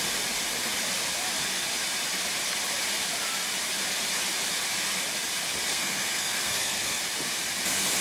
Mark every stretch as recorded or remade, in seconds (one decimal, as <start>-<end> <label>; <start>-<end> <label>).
0.0-5.7 recorded; 5.7-7.0 remade; 7.0-8.0 recorded